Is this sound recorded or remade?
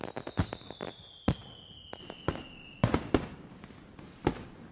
remade